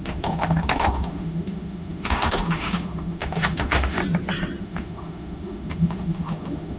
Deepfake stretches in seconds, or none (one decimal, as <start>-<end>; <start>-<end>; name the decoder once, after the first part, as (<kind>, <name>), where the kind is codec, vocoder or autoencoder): 0.0-4.0 (autoencoder, DAC-VAE); 4.6-6.8

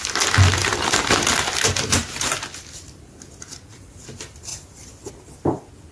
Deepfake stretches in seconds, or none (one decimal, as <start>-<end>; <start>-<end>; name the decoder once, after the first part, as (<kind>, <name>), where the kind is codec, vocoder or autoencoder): none

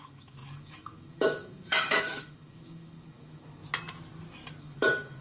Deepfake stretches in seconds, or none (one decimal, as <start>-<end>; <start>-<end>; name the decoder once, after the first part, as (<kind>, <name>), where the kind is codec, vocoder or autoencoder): 0.0-3.6 (autoencoder, DAC-VAE); 4.6-5.2

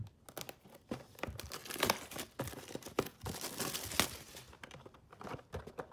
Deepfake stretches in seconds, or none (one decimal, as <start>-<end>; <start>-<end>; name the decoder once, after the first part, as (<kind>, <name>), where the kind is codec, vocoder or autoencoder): none

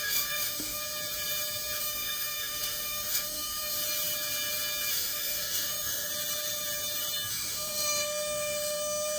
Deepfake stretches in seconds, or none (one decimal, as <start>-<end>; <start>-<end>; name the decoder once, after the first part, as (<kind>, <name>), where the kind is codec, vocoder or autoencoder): 0.0-0.8 (autoencoder, DAC-VAE); 1.8-3.8; 4.9-6.1; 7.3-9.2

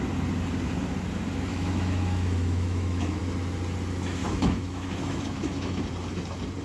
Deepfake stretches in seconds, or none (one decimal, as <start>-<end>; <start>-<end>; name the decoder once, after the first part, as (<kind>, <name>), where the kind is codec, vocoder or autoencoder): 1.5-3.2 (autoencoder, DAC-VAE); 4.2-5.8

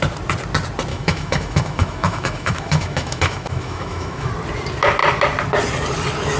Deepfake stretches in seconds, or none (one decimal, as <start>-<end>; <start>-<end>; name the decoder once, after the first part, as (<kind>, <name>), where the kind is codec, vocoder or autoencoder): 0.9-4.3 (autoencoder, DAC-VAE)

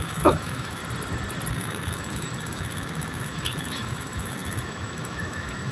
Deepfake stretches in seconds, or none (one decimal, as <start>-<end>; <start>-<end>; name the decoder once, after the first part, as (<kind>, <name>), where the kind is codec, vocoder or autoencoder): 0.0-0.8 (autoencoder, DAC-VAE); 1.5-5.7